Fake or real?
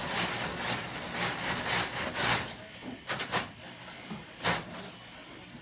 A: real